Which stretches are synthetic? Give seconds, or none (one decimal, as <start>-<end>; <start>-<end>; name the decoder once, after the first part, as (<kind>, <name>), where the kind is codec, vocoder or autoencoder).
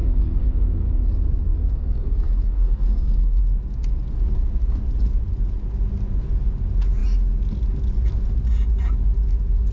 0.0-1.1 (codec, SNAC); 1.5-3.4